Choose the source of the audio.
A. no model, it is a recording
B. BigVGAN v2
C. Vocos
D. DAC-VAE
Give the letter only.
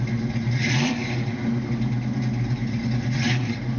A